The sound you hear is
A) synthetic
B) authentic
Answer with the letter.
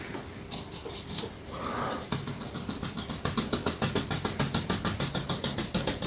B